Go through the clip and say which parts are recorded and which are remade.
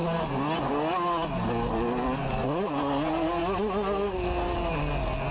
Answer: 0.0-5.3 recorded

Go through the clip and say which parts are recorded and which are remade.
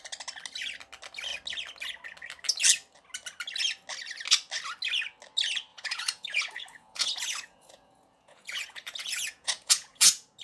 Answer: 0.0-5.7 recorded; 5.7-10.4 remade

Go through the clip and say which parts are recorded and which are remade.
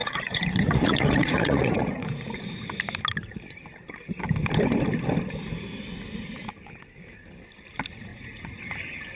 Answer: 0.0-2.6 remade; 2.6-8.1 recorded; 8.1-8.6 remade; 8.6-9.1 recorded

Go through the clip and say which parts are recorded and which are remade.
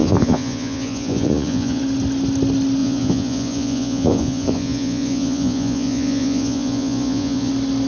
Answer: 0.0-1.8 remade; 1.8-2.8 recorded; 2.8-7.5 remade; 7.5-7.9 recorded